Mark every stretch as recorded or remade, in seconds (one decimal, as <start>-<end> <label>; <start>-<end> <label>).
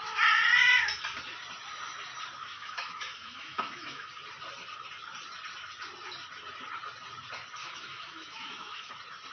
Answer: 0.0-2.4 recorded; 2.4-4.1 remade; 4.1-7.6 recorded; 7.6-8.9 remade; 8.9-9.3 recorded